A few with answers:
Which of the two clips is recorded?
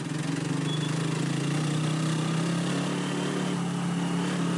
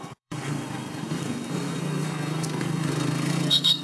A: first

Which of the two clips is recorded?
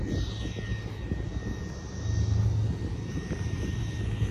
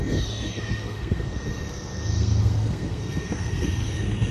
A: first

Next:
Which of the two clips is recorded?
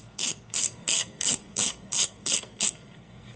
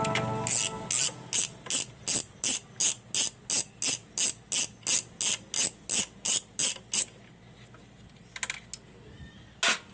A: second